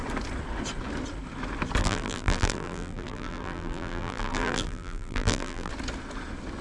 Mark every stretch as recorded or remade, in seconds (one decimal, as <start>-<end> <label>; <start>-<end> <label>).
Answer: 0.0-1.8 recorded; 1.8-5.7 remade; 5.7-6.6 recorded